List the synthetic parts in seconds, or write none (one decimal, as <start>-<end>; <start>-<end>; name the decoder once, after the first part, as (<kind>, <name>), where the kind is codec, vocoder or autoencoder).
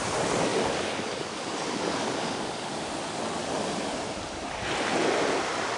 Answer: 0.5-2.7 (codec, DAC)